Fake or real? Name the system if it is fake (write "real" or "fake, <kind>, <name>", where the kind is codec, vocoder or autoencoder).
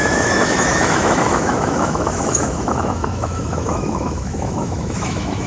fake, autoencoder, DAC-VAE